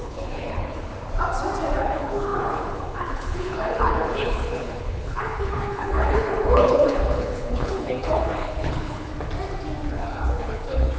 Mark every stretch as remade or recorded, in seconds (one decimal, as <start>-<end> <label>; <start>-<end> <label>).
0.0-0.9 remade; 0.9-1.8 recorded; 1.8-9.1 remade; 9.1-9.9 recorded; 9.9-11.0 remade